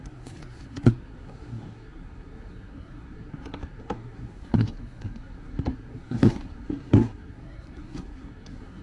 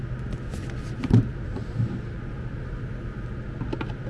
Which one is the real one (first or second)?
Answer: second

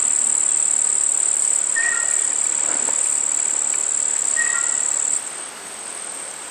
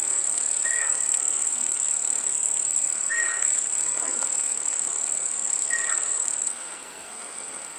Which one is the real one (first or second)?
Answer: first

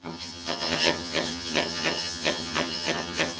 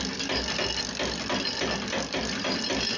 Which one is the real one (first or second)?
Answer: second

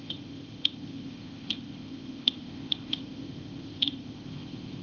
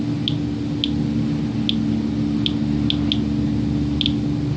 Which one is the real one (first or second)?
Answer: second